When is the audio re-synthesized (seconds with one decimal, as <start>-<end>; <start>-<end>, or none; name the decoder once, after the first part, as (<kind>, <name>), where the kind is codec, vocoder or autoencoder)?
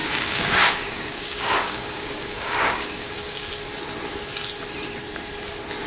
0.0-3.5 (codec, DAC)